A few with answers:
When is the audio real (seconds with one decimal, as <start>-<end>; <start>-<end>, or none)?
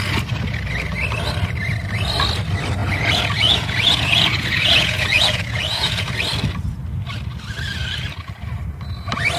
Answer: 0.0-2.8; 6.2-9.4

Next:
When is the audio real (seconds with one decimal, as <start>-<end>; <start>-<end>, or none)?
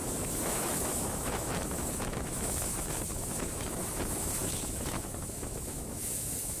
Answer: none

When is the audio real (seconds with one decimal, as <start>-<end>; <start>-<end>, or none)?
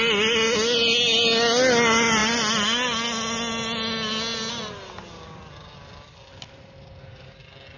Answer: 0.0-7.8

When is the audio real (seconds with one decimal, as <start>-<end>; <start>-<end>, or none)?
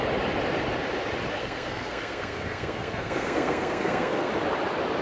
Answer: 0.0-1.3; 4.3-5.0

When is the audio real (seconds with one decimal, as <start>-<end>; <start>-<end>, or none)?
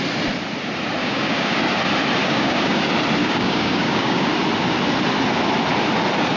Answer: 0.0-1.0; 1.6-2.2; 2.8-3.2; 4.3-6.4